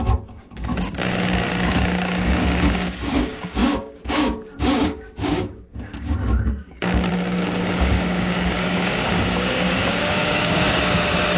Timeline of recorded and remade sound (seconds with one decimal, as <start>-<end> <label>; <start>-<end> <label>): 0.0-11.4 remade